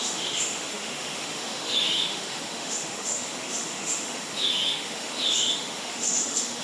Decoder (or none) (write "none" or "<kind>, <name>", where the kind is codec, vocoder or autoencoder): autoencoder, DAC-VAE